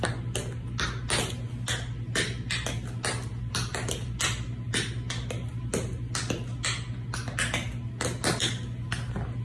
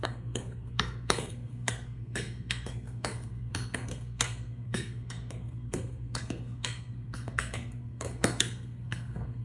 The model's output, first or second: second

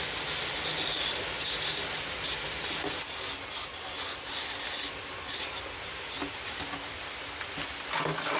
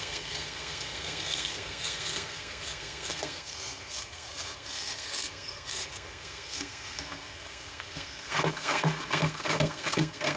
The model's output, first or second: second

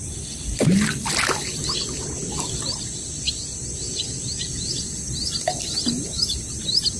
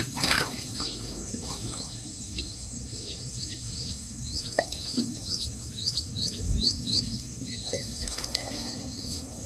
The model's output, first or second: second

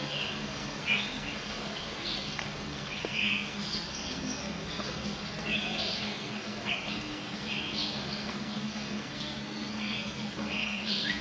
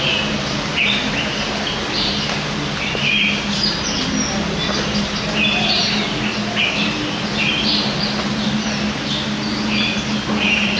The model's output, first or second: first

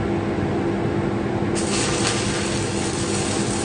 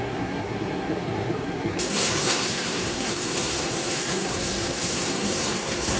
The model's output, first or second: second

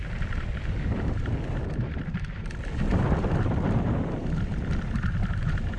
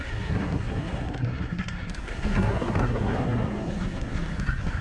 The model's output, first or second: second